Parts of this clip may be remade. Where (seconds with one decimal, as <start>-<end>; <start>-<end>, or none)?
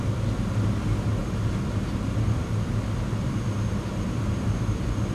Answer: none